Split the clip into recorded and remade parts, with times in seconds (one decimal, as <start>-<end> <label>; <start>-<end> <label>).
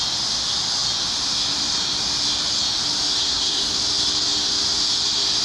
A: 0.0-3.2 recorded; 3.2-3.8 remade; 3.8-5.4 recorded